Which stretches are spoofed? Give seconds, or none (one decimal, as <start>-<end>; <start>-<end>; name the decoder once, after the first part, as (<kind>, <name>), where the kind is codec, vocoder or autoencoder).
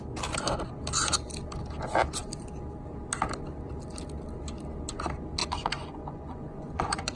5.4-7.2 (vocoder, Vocos)